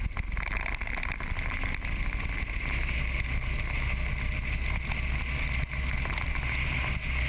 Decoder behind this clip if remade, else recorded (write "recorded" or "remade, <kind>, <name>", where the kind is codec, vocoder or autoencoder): recorded